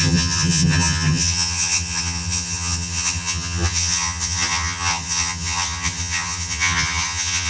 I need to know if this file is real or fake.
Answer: fake